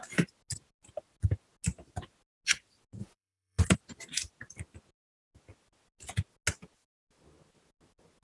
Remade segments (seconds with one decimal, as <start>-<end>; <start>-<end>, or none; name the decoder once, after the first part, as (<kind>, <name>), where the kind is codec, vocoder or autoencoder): 3.0-3.6 (vocoder, Vocos)